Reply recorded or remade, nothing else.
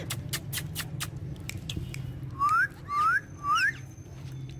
recorded